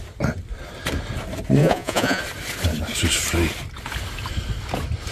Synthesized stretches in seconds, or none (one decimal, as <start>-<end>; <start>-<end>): 1.6-2.2